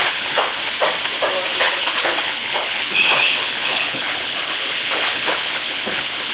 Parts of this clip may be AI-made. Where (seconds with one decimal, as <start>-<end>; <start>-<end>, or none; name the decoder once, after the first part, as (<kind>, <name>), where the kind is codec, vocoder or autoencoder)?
0.0-0.6 (codec, HILCodec); 1.6-6.3